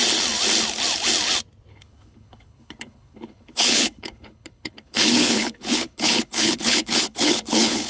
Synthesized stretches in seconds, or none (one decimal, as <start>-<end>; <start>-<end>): 1.7-7.9